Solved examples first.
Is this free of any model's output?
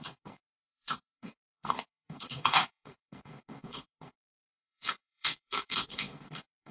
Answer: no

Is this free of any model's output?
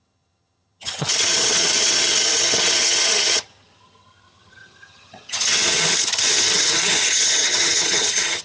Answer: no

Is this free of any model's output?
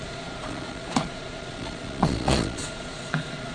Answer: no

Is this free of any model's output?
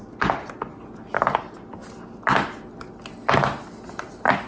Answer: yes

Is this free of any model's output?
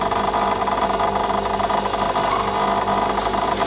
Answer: yes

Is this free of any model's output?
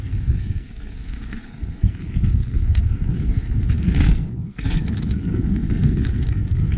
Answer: no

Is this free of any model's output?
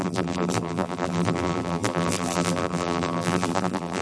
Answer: no